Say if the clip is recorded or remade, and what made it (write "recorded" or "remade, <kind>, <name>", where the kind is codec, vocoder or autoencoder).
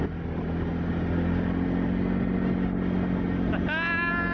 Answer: recorded